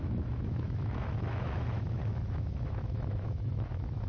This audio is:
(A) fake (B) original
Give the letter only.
A